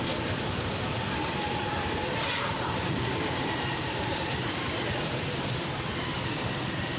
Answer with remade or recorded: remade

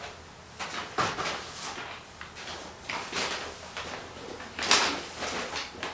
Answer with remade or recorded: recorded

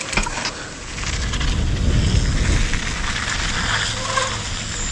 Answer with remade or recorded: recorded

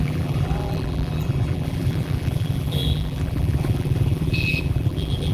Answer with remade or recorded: remade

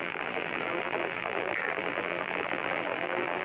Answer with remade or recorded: remade